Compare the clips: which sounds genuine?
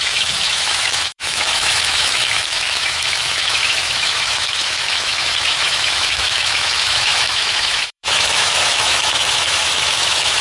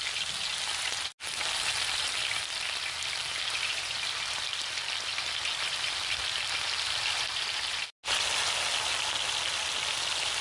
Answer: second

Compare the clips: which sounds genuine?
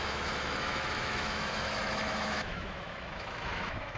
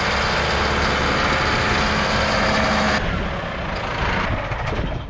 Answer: second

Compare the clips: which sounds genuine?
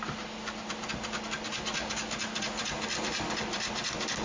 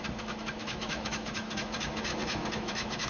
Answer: first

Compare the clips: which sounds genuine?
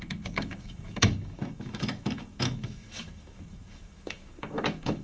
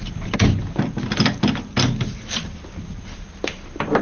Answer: second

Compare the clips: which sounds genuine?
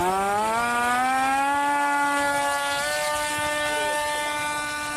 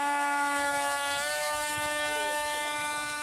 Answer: first